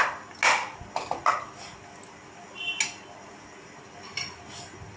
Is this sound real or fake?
real